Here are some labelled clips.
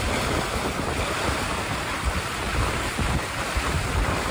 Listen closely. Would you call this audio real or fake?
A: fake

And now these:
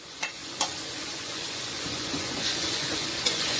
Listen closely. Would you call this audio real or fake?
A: fake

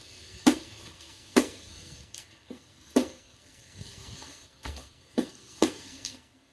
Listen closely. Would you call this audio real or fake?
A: fake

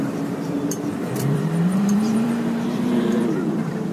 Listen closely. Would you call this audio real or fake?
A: fake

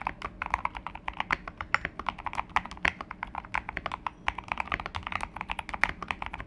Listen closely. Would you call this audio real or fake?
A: real